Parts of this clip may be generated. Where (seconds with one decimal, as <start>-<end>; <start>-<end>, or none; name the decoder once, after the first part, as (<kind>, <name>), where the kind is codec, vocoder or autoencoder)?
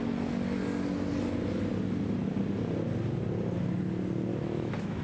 4.3-5.0 (autoencoder, DAC-VAE)